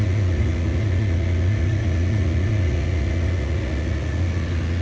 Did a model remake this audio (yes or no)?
yes